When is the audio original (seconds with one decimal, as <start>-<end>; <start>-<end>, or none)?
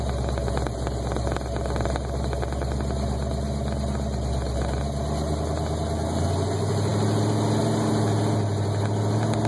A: 0.0-9.5